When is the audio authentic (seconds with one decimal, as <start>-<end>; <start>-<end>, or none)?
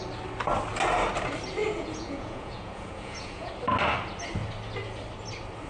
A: 0.0-1.6; 3.5-5.7